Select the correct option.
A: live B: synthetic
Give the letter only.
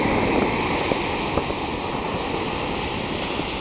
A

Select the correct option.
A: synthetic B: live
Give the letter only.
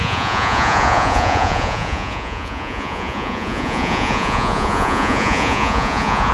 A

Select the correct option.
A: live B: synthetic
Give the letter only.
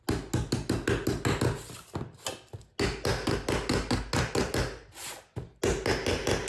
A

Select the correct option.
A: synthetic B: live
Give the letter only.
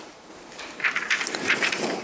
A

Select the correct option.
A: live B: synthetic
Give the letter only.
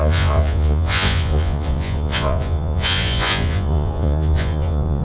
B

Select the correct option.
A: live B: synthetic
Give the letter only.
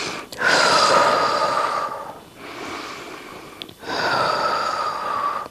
A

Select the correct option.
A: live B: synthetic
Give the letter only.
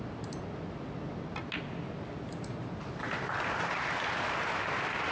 A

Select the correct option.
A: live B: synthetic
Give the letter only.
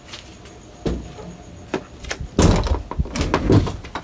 A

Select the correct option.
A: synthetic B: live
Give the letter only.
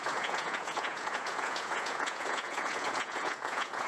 A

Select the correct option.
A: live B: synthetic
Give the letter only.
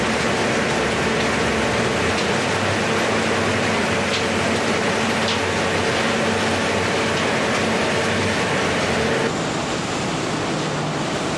A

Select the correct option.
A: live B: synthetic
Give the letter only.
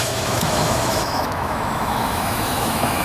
B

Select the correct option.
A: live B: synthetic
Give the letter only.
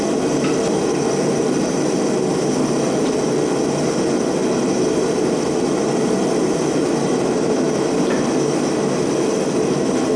A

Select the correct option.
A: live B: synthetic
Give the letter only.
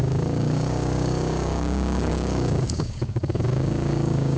B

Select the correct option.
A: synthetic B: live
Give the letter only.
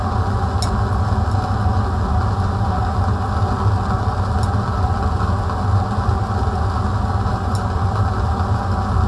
B